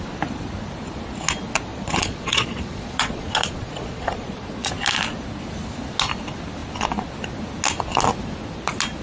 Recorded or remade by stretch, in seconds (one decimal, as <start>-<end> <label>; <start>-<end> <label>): 0.0-1.7 recorded; 1.7-4.7 remade; 4.7-9.0 recorded